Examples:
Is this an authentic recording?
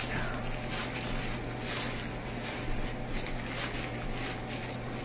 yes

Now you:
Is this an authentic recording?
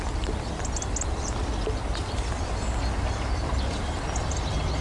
yes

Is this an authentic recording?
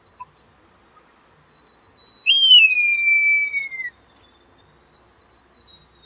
yes